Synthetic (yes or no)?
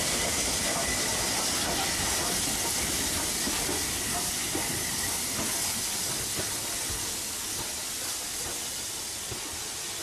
no